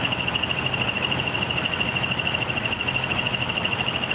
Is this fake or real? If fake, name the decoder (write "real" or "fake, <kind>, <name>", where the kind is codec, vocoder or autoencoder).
fake, autoencoder, DAC-VAE